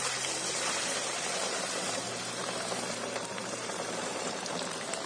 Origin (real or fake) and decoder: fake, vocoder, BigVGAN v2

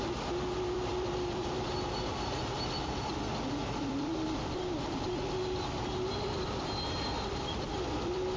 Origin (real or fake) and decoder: fake, vocoder, BigVGAN v2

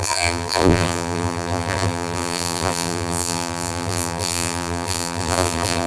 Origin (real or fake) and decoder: fake, vocoder, BigVGAN v2